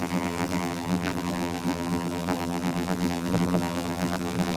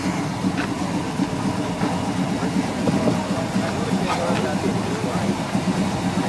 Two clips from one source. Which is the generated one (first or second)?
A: first